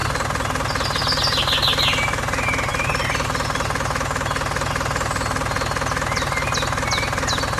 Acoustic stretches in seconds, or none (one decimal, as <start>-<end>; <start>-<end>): 0.0-7.6